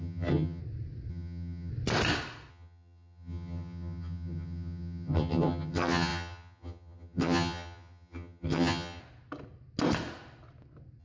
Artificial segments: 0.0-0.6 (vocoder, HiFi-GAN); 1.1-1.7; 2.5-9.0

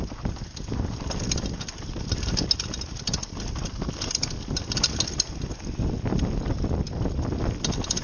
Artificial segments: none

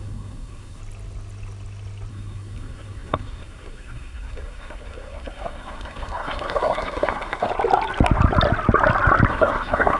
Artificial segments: 0.0-0.8 (codec, SNAC); 2.1-7.5; 9.3-10.0